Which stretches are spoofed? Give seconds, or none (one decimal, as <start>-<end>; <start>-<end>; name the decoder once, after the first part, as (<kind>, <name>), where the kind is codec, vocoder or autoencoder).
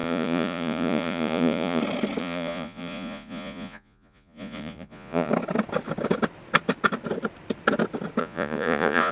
0.0-1.8 (vocoder, Vocos); 2.2-5.3; 8.2-9.1